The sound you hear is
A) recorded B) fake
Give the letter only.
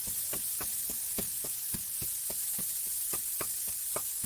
A